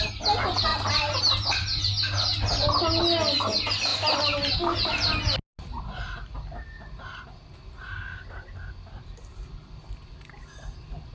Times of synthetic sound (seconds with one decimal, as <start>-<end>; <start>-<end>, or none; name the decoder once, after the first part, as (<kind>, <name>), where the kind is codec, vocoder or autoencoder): none